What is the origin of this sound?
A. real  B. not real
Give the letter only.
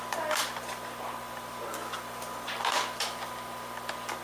B